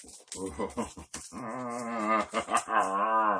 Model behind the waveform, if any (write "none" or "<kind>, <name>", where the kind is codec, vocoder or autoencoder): none